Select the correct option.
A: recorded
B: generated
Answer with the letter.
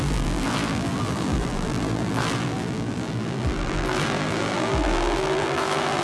B